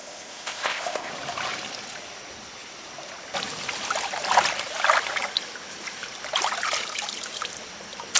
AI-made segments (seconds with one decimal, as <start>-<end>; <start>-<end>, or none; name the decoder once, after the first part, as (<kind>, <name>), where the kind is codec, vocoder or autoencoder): 0.0-1.1 (codec, ZipCodec)